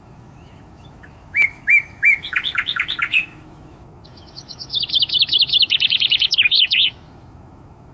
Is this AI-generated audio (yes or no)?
yes